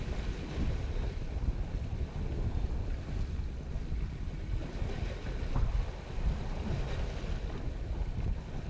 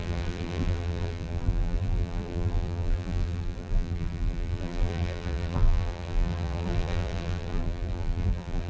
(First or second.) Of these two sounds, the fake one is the second